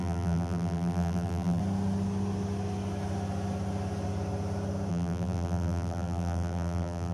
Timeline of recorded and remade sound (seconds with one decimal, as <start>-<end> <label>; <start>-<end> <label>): 0.0-1.6 remade; 1.6-4.9 recorded; 4.9-7.1 remade